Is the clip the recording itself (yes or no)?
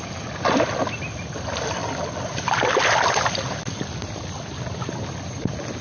yes